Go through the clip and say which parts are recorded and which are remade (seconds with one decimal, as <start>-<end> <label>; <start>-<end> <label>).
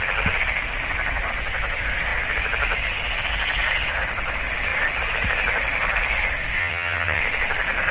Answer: 0.0-6.6 recorded; 6.6-7.2 remade; 7.2-7.9 recorded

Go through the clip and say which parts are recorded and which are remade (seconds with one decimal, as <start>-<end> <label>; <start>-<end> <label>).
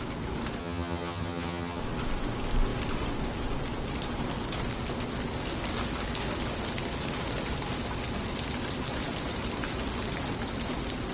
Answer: 0.0-0.6 recorded; 0.6-1.8 remade; 1.8-11.1 recorded